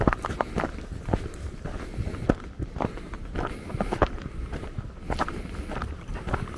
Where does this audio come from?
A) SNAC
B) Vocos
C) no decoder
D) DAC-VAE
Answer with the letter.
C